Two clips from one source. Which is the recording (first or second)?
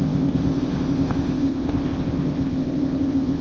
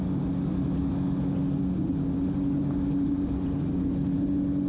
second